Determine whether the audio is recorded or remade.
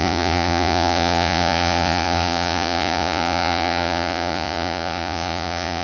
remade